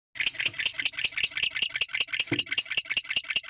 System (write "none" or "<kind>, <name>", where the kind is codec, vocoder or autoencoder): none